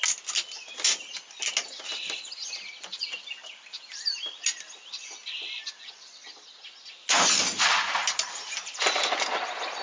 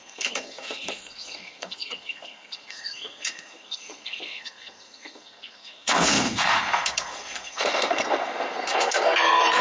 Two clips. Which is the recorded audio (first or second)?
first